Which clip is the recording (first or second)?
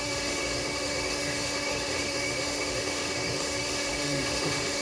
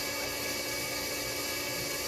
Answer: second